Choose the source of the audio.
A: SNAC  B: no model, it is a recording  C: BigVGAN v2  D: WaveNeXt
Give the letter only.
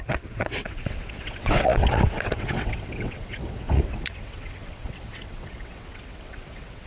D